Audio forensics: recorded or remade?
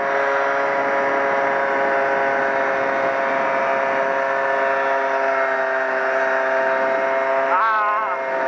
recorded